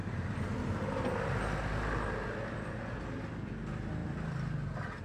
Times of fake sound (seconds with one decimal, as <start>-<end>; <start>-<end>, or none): none